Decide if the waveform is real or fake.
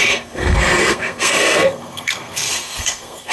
fake